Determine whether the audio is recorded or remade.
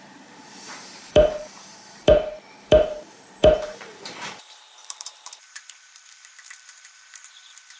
remade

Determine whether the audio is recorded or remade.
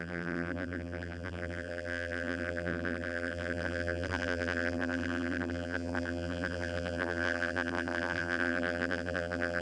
remade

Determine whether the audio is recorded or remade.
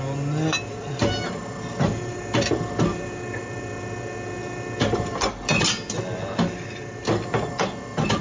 recorded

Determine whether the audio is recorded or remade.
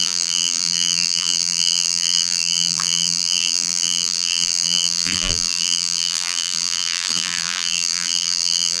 remade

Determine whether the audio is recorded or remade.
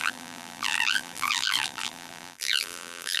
remade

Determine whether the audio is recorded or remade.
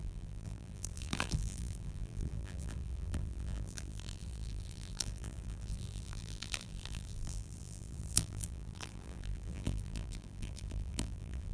remade